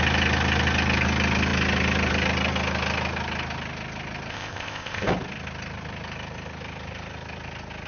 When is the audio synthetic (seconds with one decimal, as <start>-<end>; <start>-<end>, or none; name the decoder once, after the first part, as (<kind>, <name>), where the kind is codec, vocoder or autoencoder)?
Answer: 4.3-5.1 (codec, ZipCodec)